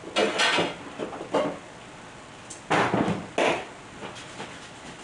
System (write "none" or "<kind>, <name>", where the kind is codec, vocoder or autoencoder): none